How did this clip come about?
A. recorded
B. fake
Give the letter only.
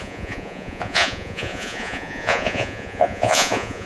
B